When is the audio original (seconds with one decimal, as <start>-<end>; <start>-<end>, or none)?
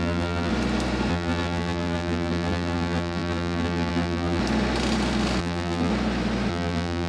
0.5-1.1; 4.4-5.4; 5.9-6.5